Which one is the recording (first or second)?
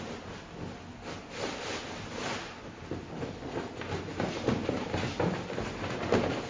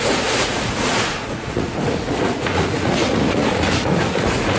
first